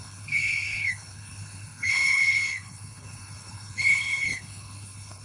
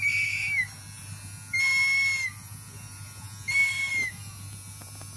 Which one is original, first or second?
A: second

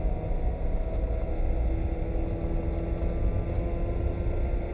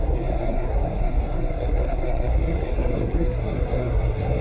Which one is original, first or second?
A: first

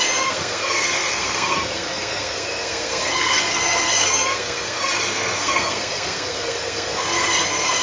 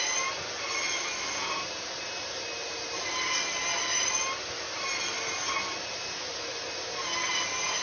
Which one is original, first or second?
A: second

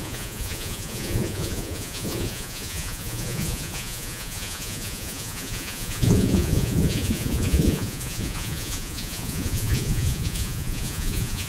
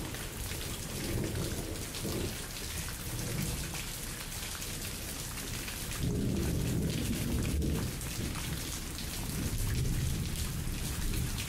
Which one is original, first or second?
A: second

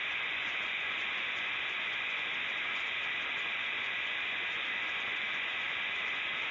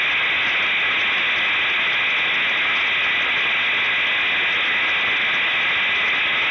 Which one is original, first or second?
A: second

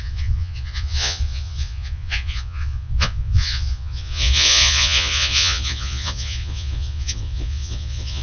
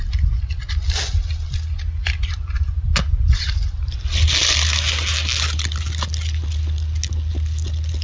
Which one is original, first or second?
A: second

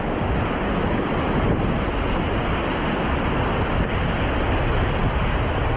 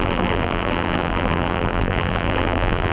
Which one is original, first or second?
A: first